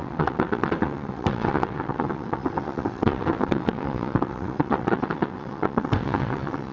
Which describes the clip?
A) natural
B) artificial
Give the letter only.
B